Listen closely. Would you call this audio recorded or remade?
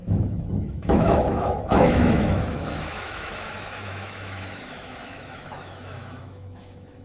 remade